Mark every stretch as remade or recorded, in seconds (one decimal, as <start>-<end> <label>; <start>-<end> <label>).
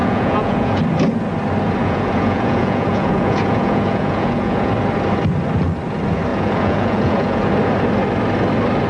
0.0-0.8 remade; 0.8-1.8 recorded; 1.8-4.7 remade; 4.7-6.3 recorded; 6.3-7.5 remade; 7.5-8.9 recorded